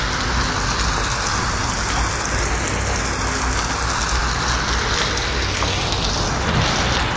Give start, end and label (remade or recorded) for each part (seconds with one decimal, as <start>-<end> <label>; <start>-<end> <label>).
0.0-1.3 recorded; 1.3-1.9 remade; 1.9-7.2 recorded